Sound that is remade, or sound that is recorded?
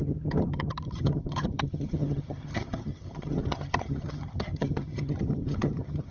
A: remade